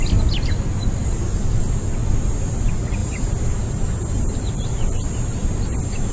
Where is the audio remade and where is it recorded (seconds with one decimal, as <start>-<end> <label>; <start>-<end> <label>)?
0.0-3.0 recorded; 3.0-4.4 remade; 4.4-6.1 recorded